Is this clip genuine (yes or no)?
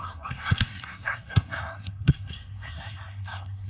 no